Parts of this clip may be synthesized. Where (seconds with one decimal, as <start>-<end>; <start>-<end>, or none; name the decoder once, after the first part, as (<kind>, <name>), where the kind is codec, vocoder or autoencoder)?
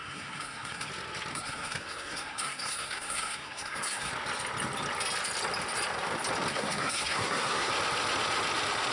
0.0-0.9 (codec, SNAC); 1.3-4.1; 6.5-7.7